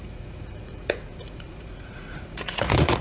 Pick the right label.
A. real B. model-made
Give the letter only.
B